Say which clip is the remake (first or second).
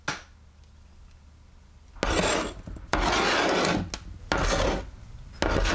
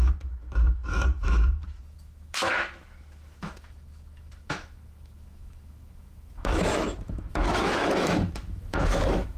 second